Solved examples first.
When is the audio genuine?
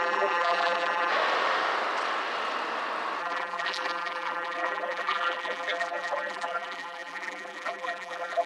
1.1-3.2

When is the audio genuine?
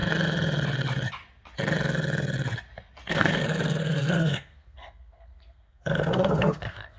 0.0-3.1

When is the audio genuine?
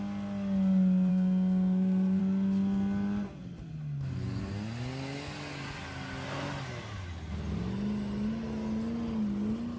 0.0-1.1; 2.2-9.8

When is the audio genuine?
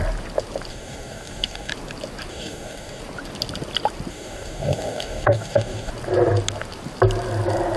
0.0-0.7; 1.7-2.3; 3.0-4.1; 5.9-7.8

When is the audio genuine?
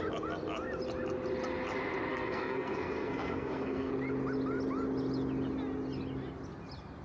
0.0-2.1; 3.9-7.0